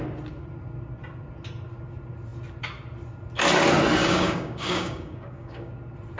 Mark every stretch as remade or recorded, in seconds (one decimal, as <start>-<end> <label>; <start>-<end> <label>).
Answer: 0.0-4.0 recorded; 4.0-5.7 remade; 5.7-6.2 recorded